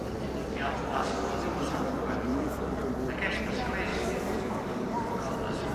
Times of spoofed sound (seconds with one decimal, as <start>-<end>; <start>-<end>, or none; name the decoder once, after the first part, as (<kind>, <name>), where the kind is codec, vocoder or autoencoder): 0.4-1.3 (codec, DAC); 2.3-2.9; 3.9-5.3